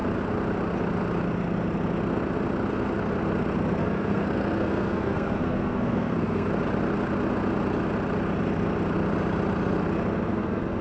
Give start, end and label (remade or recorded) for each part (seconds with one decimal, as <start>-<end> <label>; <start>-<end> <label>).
0.0-3.8 recorded; 3.8-6.5 remade; 6.5-10.3 recorded; 10.3-10.8 remade